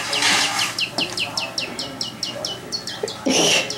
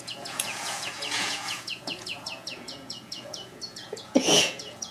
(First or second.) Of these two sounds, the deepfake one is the second